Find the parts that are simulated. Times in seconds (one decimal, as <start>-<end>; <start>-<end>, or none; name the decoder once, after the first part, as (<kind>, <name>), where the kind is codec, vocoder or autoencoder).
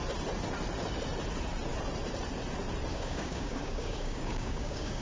2.9-5.0 (codec, DAC)